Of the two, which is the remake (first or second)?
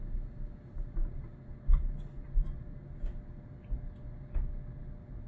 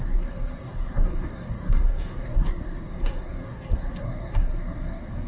second